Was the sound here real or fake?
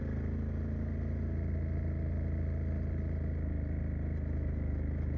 real